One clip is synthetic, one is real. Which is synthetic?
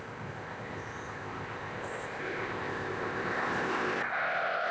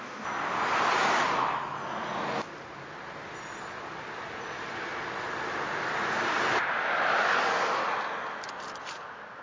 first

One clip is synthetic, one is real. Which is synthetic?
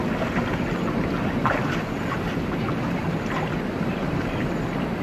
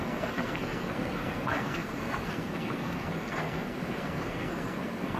second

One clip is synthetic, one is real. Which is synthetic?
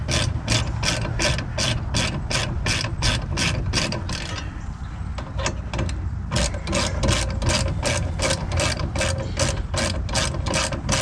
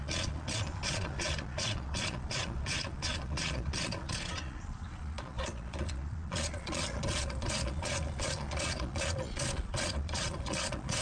second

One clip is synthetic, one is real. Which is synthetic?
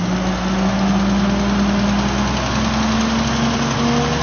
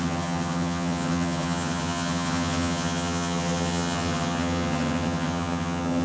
second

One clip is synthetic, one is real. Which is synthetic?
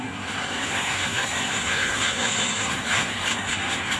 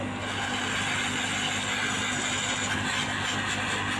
first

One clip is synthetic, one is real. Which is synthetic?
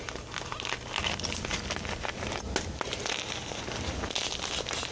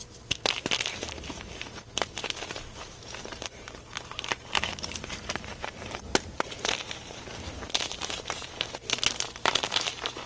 second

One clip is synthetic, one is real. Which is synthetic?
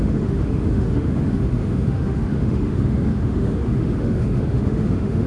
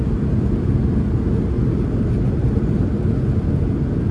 first